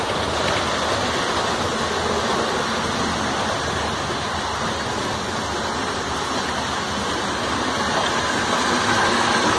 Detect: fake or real real